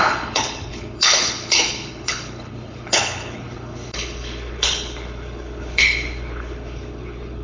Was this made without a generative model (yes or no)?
no